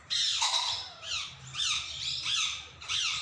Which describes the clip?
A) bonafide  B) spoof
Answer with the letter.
B